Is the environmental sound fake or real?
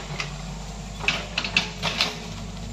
real